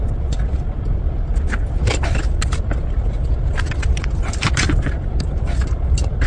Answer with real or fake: real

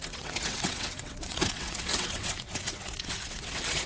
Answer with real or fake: fake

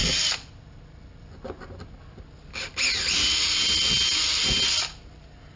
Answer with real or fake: real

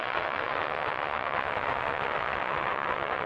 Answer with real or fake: fake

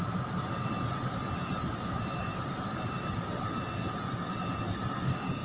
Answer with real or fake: real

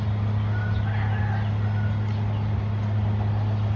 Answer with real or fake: real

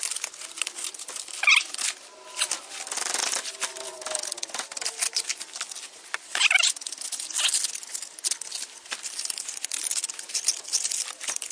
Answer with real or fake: real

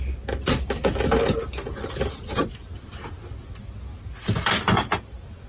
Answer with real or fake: real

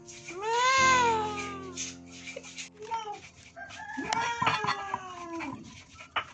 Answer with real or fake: real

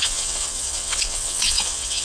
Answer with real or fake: fake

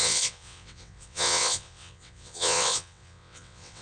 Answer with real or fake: fake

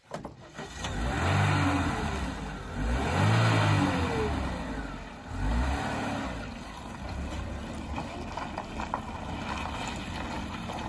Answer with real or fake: real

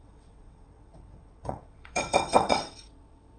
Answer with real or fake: fake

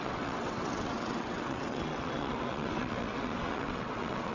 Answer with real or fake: fake